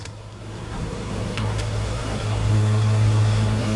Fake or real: fake